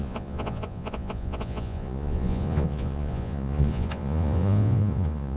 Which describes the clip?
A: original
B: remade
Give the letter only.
B